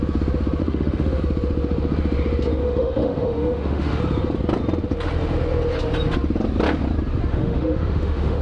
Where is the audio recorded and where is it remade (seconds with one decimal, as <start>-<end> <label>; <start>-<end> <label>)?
0.0-0.6 recorded; 0.6-1.2 remade; 1.2-2.6 recorded; 2.6-4.0 remade; 4.0-7.3 recorded; 7.3-8.4 remade